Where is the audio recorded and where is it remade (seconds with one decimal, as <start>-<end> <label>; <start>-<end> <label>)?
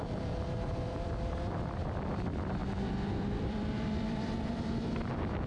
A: 0.0-2.6 remade; 2.6-3.2 recorded; 3.2-5.5 remade